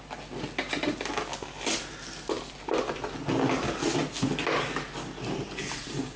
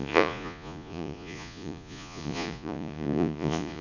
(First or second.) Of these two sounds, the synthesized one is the second